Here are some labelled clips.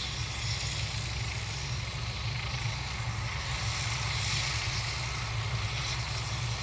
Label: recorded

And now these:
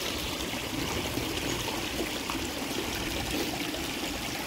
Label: remade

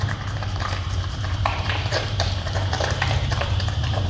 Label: remade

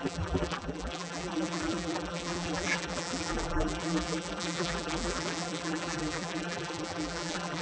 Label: remade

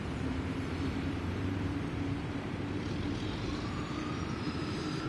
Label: remade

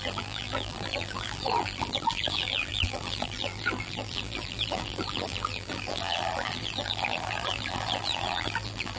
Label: remade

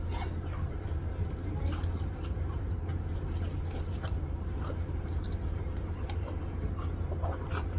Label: remade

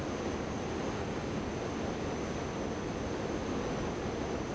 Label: recorded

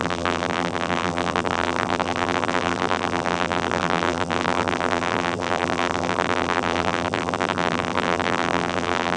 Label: remade